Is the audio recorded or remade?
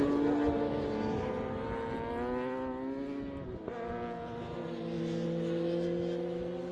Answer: recorded